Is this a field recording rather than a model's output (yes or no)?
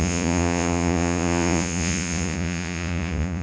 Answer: no